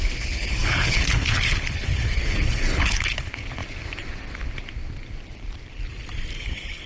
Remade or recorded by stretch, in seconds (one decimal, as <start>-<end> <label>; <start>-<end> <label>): 0.0-3.6 remade; 3.6-6.4 recorded; 6.4-6.9 remade